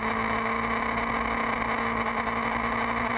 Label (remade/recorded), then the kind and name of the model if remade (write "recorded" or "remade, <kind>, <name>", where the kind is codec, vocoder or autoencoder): recorded